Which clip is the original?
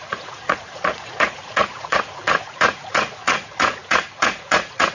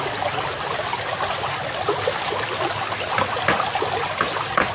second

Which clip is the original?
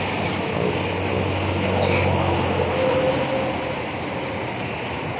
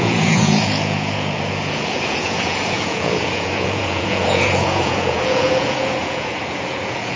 first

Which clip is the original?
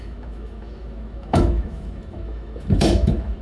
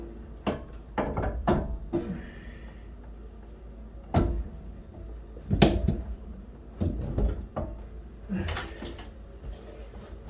second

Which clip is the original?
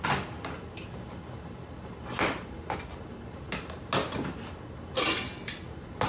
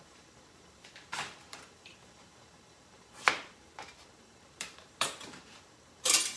first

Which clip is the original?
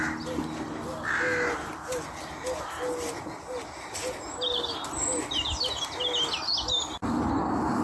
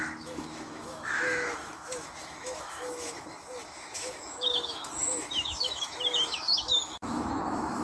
first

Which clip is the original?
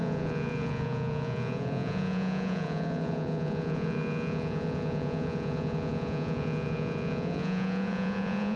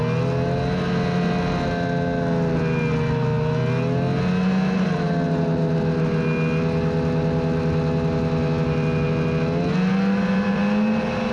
second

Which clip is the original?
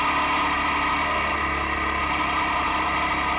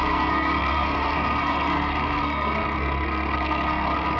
first